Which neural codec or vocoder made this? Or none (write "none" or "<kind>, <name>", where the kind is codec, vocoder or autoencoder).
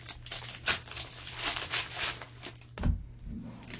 none